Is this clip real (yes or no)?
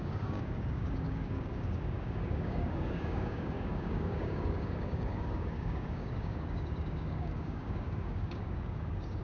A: no